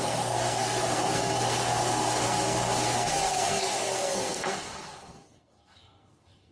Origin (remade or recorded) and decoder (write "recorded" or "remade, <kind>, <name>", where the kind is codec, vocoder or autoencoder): remade, codec, SNAC